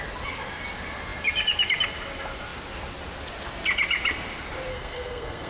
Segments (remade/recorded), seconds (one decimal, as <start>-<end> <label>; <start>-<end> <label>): 0.0-4.7 recorded; 4.7-5.5 remade